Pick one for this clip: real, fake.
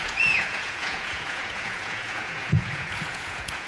fake